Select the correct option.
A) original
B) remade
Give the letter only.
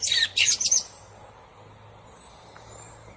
A